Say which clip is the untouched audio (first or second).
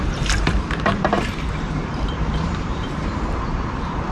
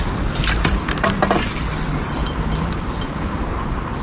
second